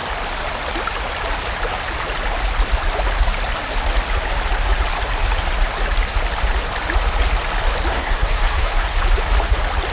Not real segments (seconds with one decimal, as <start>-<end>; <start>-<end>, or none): 7.9-9.0